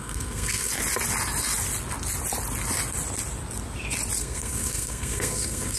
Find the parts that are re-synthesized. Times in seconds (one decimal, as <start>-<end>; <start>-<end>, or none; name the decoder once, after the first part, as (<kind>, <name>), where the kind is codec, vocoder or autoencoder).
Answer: 0.0-0.7 (codec, SNAC); 4.2-5.8